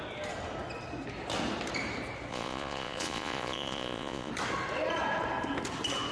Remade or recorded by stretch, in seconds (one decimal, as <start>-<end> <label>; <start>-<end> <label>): 0.0-2.3 recorded; 2.3-4.3 remade; 4.3-6.1 recorded